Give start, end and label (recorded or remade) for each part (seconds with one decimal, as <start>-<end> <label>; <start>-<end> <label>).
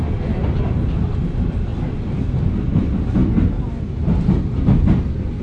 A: 0.0-3.2 recorded; 3.2-4.6 remade; 4.6-5.4 recorded